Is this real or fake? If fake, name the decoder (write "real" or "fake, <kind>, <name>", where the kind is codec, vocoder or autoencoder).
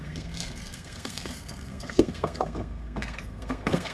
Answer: fake, codec, SNAC